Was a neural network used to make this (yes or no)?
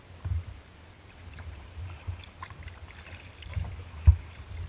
no